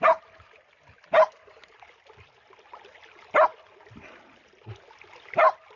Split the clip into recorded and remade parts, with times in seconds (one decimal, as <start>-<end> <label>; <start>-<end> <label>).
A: 0.0-5.8 recorded